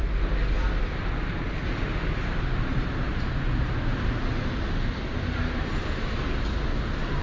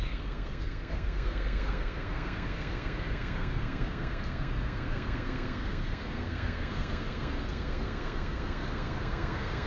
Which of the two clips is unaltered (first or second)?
first